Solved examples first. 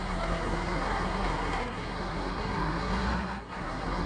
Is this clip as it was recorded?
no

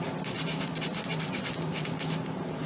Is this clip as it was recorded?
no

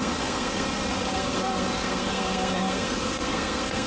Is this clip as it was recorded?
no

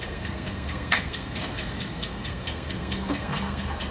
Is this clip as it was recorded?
no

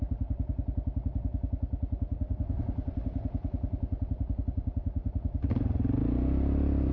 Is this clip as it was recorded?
yes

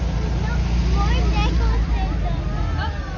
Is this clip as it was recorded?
yes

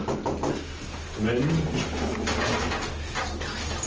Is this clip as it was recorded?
yes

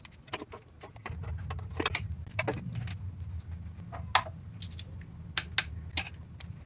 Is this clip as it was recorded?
yes